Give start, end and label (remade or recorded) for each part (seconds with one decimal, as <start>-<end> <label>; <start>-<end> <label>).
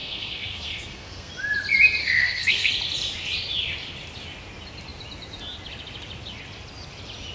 0.0-1.3 remade; 1.3-2.0 recorded; 2.0-2.7 remade; 2.7-7.3 recorded